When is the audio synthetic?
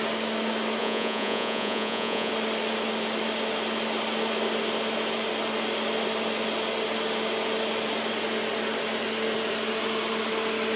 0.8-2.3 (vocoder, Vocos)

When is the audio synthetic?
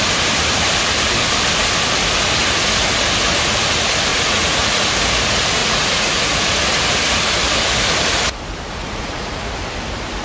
4.1-4.9 (vocoder, Vocos); 5.6-6.5; 8.8-9.5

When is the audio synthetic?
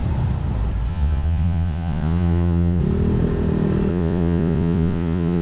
0.9-2.8 (vocoder, Vocos); 3.9-5.4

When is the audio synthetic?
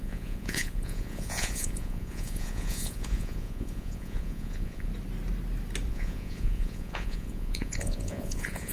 0.0-4.9 (vocoder, Vocos); 5.9-8.7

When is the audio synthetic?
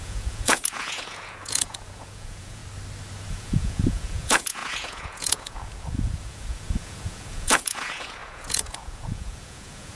0.0-2.6 (vocoder, Vocos); 3.3-10.0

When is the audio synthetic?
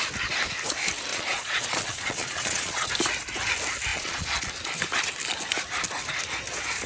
1.1-2.9 (vocoder, Vocos); 3.9-4.5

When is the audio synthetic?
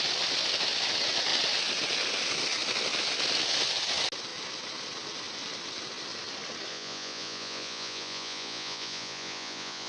6.7-9.9 (vocoder, Vocos)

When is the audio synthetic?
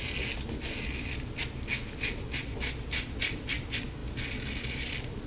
none